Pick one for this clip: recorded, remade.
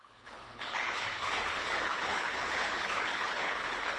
remade